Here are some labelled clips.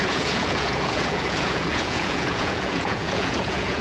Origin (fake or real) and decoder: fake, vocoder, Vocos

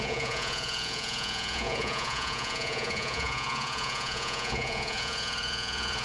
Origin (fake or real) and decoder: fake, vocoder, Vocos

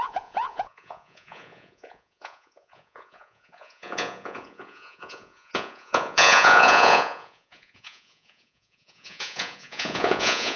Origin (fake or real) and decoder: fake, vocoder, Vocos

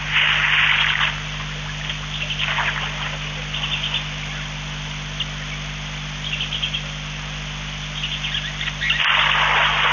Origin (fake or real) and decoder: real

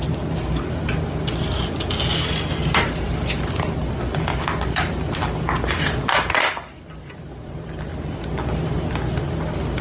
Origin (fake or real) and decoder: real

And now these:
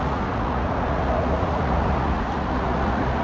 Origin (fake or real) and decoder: fake, vocoder, Vocos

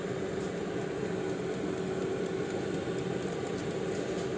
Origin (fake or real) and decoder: real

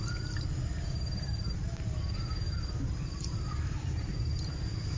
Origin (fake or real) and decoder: real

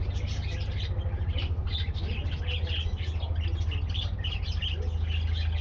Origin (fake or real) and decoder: real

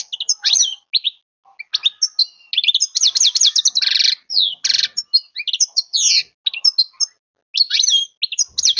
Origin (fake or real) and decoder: real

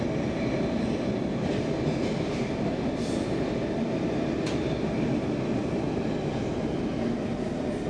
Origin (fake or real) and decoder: real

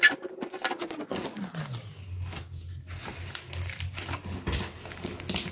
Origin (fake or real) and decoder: real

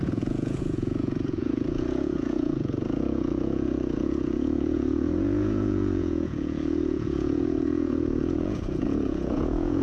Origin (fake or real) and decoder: fake, vocoder, Vocos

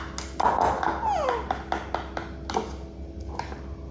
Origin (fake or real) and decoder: real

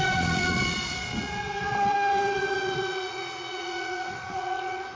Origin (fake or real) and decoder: fake, vocoder, Vocos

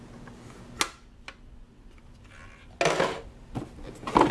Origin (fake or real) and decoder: real